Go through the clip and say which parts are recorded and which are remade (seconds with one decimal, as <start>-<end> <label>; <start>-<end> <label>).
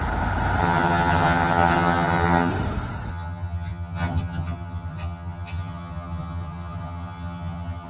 0.0-0.6 recorded; 0.6-2.5 remade; 2.5-3.1 recorded; 3.1-7.9 remade